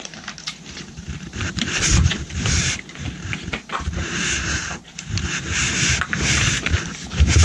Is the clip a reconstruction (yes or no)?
yes